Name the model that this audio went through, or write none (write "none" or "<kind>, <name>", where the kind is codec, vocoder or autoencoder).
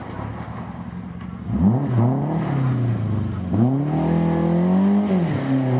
none